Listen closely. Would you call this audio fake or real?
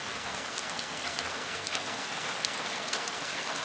fake